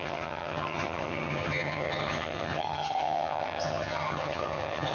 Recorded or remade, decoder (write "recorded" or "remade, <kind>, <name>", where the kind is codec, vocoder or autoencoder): remade, vocoder, HiFi-GAN